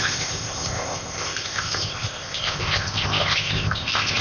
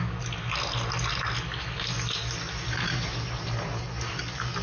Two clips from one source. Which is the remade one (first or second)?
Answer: first